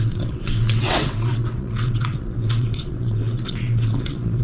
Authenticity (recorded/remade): remade